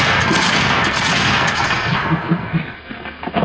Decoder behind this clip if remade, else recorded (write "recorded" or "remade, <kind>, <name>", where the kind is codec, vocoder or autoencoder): remade, codec, SNAC